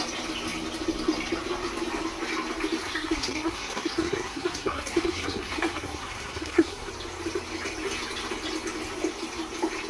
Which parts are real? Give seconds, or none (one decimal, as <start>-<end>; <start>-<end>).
0.0-2.8; 6.9-9.9